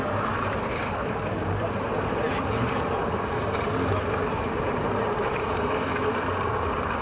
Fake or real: fake